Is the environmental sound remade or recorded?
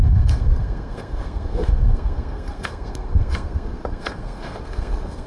remade